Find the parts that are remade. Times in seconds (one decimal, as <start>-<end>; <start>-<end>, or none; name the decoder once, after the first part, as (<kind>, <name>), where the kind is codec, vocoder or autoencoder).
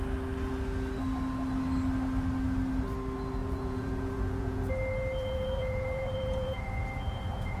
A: 3.4-4.7 (vocoder, Vocos); 5.2-7.6